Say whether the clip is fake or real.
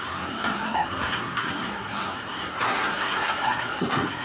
fake